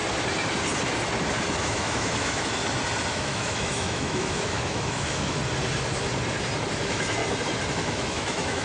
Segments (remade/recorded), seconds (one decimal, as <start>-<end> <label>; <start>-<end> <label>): 0.0-1.6 recorded; 1.6-2.6 remade; 2.6-3.1 recorded; 3.1-5.4 remade; 5.4-6.7 recorded; 6.7-7.2 remade; 7.2-7.7 recorded; 7.7-8.6 remade